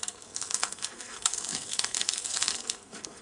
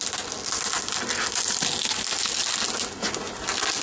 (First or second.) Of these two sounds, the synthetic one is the first